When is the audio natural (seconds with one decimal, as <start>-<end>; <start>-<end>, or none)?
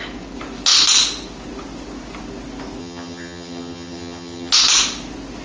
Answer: 0.0-2.8; 4.5-5.4